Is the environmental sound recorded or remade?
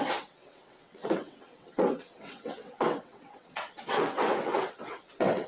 remade